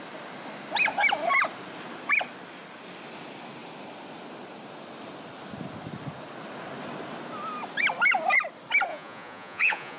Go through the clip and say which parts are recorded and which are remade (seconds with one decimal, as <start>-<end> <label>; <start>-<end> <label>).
0.0-8.9 recorded; 8.9-10.0 remade